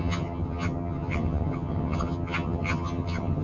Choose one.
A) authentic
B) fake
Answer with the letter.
B